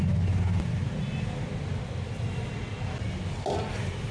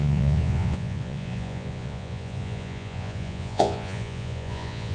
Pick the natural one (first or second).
first